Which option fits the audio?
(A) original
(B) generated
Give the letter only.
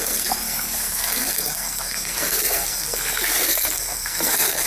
B